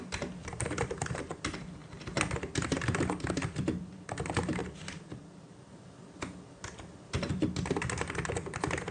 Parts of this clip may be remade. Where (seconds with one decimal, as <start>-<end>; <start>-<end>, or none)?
0.4-1.2; 4.6-5.4